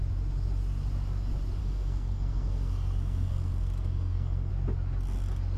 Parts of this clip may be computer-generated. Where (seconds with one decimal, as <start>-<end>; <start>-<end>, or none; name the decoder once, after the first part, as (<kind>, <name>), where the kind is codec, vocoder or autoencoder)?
1.6-4.5 (codec, SNAC)